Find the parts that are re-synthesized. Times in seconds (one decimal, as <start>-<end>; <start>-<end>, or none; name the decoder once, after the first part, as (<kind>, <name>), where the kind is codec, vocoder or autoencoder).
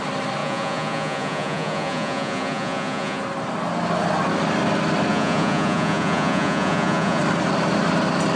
0.4-3.2 (vocoder, Vocos); 5.1-7.2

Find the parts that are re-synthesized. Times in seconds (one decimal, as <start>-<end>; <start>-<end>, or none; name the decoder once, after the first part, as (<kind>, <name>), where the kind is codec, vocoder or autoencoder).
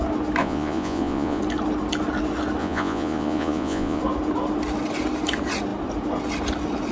0.4-1.4 (vocoder, Vocos); 2.6-4.0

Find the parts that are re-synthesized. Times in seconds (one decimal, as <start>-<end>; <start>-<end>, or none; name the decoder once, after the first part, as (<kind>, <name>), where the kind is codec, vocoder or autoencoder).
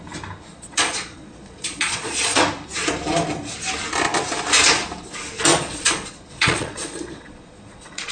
0.5-2.4 (vocoder, Vocos); 5.5-8.1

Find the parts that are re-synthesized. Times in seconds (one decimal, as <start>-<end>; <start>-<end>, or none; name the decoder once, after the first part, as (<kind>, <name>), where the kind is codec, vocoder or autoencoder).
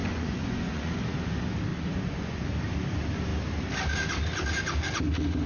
0.0-1.0 (vocoder, Vocos); 1.7-2.4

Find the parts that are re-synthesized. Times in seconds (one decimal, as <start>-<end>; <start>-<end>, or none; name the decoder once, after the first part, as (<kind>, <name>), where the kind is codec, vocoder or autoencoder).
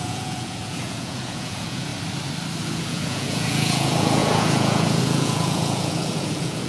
0.0-1.9 (vocoder, Vocos); 2.6-6.7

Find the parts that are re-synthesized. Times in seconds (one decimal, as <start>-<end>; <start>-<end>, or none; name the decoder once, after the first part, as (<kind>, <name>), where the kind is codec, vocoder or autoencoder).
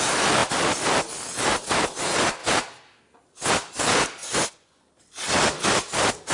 4.2-4.8 (vocoder, Vocos)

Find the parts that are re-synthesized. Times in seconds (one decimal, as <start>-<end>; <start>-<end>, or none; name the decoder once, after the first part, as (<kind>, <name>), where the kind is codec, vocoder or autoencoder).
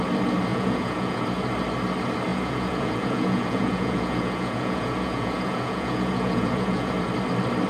0.5-1.2 (vocoder, Vocos); 2.3-6.9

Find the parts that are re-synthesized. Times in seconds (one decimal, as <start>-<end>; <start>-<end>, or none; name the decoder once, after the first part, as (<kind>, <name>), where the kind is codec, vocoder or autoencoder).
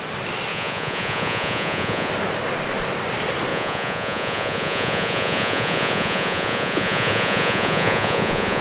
0.5-2.1 (vocoder, Vocos); 3.5-8.6